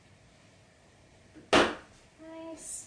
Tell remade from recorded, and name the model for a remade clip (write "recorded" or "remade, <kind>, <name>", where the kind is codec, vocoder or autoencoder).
recorded